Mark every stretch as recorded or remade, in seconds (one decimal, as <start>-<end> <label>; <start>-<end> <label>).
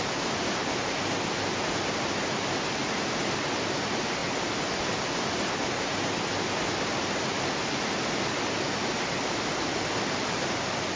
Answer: 0.0-11.0 recorded